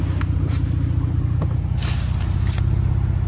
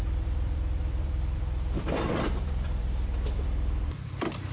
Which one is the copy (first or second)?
second